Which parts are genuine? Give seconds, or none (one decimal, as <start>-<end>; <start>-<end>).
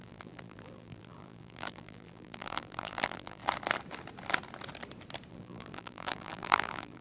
3.4-5.3